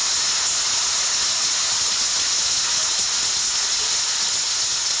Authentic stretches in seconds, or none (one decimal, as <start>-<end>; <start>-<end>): 0.0-5.0